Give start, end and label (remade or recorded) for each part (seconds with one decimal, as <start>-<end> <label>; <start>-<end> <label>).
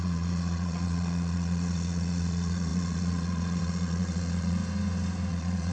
0.0-4.6 remade; 4.6-5.3 recorded; 5.3-5.7 remade